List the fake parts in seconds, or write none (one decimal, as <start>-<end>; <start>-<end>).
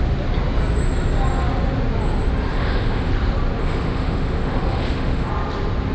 2.5-3.1; 3.6-5.3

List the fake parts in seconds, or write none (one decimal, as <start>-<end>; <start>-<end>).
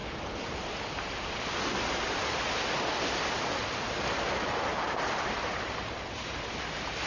0.0-2.7; 4.7-6.5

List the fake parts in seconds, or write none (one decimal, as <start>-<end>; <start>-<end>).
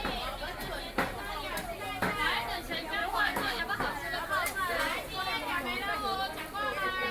3.0-3.6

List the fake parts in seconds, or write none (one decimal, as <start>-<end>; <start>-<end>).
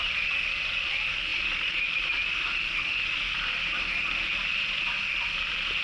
none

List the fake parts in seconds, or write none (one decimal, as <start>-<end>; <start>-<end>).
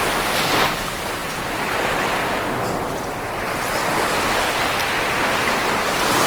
none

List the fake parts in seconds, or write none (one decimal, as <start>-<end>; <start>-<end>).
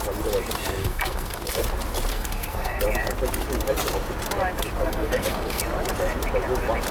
0.8-1.6; 2.1-2.8; 4.8-5.6